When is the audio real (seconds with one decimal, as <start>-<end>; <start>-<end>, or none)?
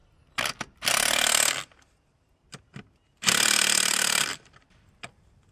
0.0-3.3